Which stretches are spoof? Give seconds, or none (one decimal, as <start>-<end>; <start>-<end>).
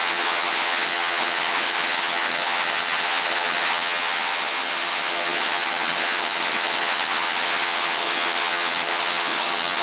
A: 0.0-9.8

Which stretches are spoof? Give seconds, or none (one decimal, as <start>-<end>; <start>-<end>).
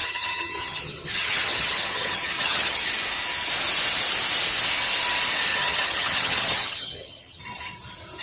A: 0.0-2.8; 5.5-7.4